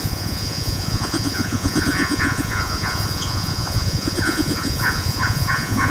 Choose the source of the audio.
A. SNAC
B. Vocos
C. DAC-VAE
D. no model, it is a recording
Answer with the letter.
B